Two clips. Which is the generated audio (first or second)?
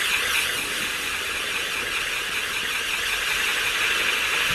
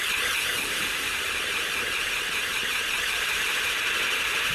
second